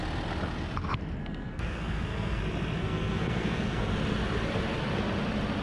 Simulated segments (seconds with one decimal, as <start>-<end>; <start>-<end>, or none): 1.2-2.4; 2.8-3.9